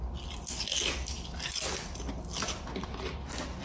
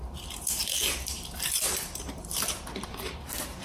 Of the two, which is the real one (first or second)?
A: first